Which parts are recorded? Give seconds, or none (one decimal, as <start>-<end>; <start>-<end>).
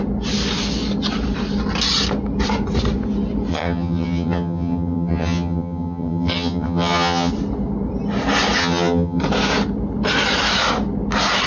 0.0-3.5; 7.3-8.6; 9.2-11.5